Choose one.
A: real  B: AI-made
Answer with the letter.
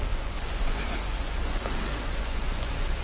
B